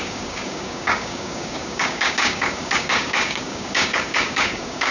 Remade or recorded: remade